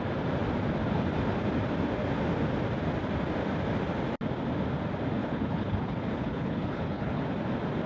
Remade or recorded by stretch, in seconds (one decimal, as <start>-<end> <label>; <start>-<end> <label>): 0.0-5.2 recorded; 5.2-7.2 remade; 7.2-7.9 recorded